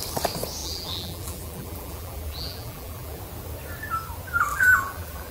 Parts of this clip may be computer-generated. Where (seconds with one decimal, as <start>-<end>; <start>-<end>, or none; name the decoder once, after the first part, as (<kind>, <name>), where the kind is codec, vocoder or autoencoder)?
0.6-3.2 (vocoder, BigVGAN v2); 4.5-5.3